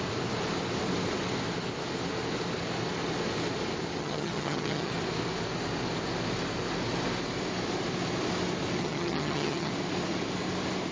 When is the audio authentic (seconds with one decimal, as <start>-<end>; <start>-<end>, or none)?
0.0-4.0; 4.9-8.8; 9.7-10.9